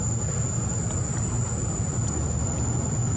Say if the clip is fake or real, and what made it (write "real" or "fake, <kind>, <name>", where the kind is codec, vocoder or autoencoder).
real